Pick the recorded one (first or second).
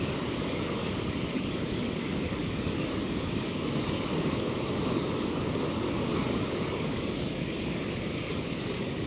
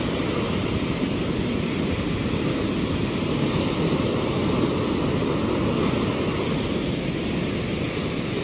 second